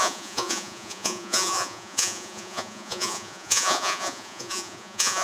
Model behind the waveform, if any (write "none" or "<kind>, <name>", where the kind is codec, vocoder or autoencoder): vocoder, Vocos